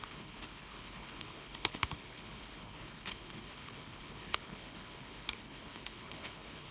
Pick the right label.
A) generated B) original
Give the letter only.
A